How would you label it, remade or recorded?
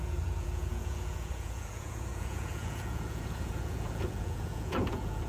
remade